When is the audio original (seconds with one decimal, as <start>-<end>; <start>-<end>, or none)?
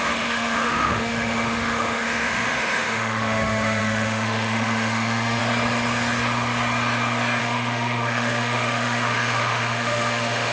5.4-7.4